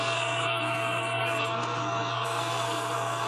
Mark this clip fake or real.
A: fake